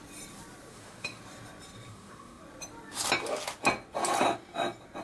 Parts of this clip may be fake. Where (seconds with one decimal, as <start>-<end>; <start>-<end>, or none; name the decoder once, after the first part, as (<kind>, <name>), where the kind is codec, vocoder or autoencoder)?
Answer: 0.7-1.2 (autoencoder, DAC-VAE); 1.9-2.4